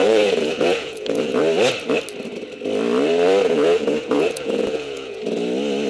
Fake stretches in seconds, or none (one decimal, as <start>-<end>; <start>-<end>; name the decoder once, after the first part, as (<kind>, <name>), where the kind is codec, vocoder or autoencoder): 0.0-1.4 (vocoder, Vocos); 3.4-5.2

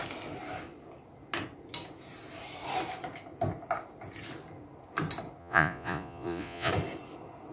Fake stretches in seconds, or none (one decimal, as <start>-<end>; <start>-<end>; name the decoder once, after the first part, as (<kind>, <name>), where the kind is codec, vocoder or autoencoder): 5.4-6.7 (vocoder, Vocos)

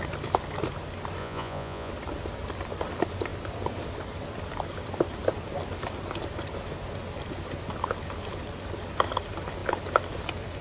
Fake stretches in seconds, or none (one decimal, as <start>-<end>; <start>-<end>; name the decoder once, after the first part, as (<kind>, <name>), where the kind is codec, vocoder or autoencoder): 1.2-1.9 (vocoder, Vocos)